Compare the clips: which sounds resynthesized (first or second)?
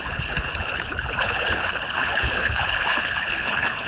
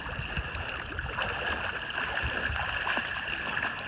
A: first